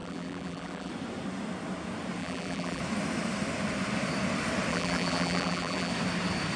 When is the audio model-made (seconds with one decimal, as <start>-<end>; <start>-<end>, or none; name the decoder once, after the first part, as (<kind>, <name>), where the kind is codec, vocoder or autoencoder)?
0.0-0.9 (vocoder, BigVGAN v2); 2.2-2.8; 4.7-5.9